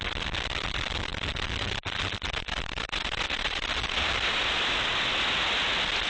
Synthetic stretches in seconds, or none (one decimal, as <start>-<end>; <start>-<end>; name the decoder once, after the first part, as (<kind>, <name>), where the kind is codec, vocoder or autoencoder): none